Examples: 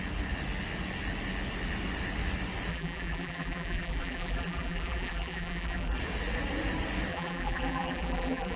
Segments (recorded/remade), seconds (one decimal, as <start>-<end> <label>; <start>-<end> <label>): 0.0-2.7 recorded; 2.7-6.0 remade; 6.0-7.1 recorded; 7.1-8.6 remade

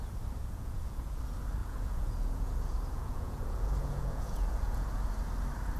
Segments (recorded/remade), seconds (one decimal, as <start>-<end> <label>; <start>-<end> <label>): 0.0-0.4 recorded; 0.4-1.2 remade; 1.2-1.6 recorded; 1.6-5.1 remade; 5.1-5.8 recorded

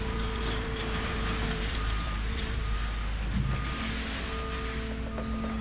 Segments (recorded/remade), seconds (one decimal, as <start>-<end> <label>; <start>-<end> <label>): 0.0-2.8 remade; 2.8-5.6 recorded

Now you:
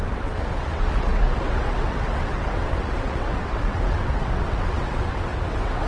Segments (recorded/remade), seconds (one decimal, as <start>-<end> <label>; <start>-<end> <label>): 0.0-5.9 remade

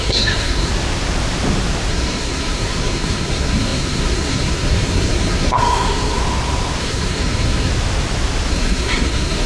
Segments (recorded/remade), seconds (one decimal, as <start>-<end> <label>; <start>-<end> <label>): 0.0-0.7 remade; 0.7-1.9 recorded; 1.9-6.2 remade; 6.2-6.8 recorded; 6.8-7.7 remade; 7.7-8.5 recorded; 8.5-9.5 remade